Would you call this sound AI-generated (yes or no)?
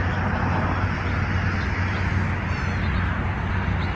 no